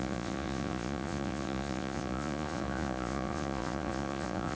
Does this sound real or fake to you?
fake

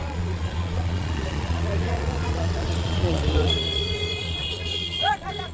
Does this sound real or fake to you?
fake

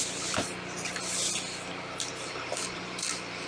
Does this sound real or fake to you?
real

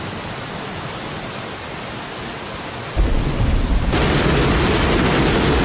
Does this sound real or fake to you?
real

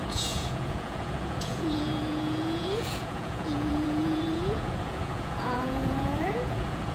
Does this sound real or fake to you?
fake